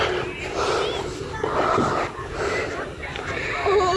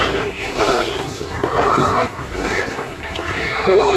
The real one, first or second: first